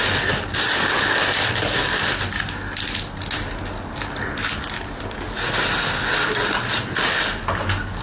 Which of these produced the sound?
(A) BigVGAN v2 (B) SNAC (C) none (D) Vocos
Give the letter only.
C